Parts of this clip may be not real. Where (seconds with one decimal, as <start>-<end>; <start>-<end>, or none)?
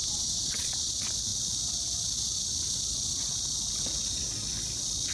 0.0-0.9